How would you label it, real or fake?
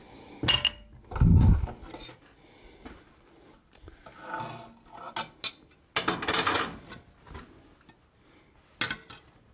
real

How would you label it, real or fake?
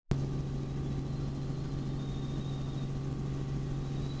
real